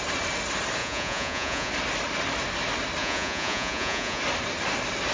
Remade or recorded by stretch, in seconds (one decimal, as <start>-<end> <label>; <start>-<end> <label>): 0.0-0.8 recorded; 0.8-1.7 remade; 1.7-3.0 recorded; 3.0-4.2 remade; 4.2-5.1 recorded